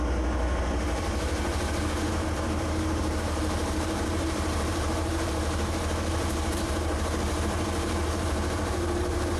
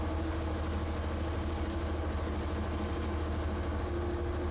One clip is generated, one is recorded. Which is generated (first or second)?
first